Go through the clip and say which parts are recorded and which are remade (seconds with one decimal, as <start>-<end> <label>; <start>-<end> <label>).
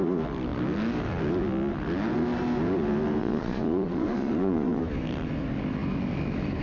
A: 0.0-3.2 recorded; 3.2-4.8 remade; 4.8-6.6 recorded